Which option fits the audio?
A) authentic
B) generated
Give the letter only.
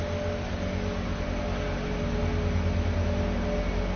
A